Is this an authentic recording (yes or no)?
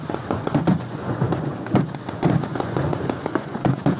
no